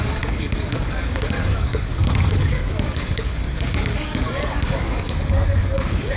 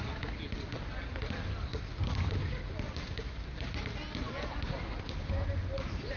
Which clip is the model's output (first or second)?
first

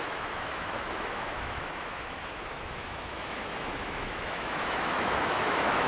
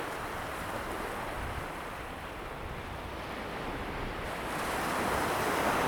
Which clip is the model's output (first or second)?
first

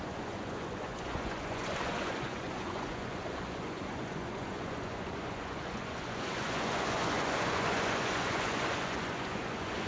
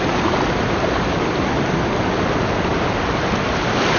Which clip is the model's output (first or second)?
first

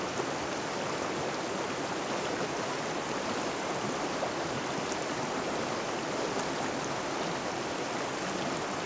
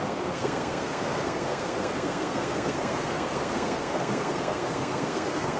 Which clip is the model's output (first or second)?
second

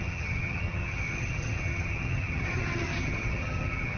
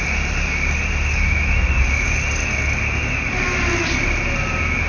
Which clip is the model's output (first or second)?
first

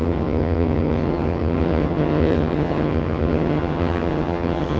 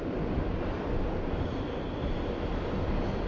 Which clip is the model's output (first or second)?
first